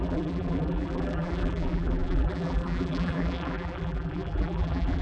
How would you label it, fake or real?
fake